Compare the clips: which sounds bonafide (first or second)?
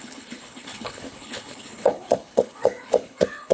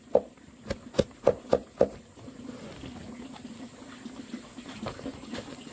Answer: second